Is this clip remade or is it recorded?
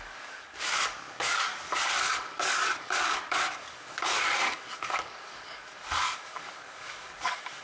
remade